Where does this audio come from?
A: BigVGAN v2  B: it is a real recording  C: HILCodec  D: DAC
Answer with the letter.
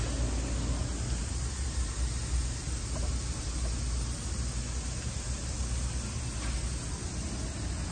B